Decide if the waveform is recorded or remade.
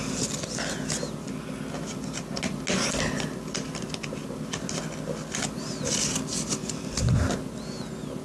recorded